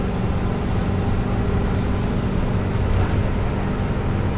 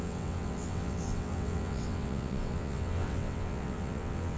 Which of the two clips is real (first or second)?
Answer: first